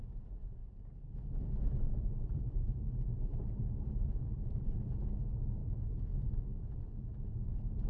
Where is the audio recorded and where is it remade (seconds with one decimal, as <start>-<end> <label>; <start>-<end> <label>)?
0.0-0.6 recorded; 0.6-1.1 remade; 1.1-2.3 recorded; 2.3-5.0 remade; 5.0-7.1 recorded; 7.1-7.9 remade